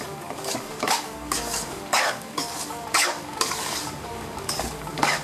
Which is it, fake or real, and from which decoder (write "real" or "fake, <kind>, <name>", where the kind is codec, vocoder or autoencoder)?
fake, codec, DAC